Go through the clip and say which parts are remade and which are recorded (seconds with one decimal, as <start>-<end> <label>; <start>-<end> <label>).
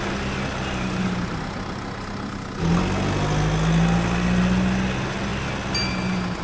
0.0-6.4 recorded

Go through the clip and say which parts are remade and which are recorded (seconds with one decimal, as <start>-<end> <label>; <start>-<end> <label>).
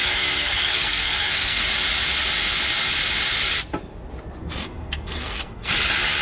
0.0-1.6 remade; 1.6-4.4 recorded; 4.4-5.7 remade; 5.7-6.2 recorded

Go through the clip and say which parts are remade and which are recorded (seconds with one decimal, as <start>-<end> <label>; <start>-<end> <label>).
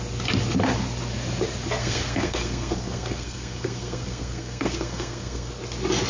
0.0-1.8 recorded; 1.8-5.5 remade; 5.5-6.1 recorded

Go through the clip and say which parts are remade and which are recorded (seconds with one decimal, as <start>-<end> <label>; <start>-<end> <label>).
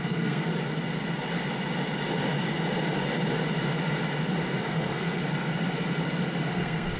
0.0-0.5 remade; 0.5-4.6 recorded; 4.6-5.2 remade; 5.2-6.5 recorded; 6.5-7.0 remade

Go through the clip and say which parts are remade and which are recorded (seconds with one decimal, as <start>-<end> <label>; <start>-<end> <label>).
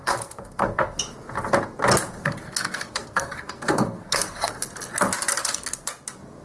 0.0-1.0 remade; 1.0-2.2 recorded; 2.2-4.5 remade; 4.5-5.4 recorded; 5.4-5.9 remade; 5.9-6.4 recorded